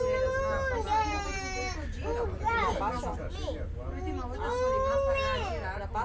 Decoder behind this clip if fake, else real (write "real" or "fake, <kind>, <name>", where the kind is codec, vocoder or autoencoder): real